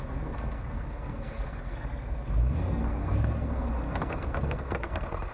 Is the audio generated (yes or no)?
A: yes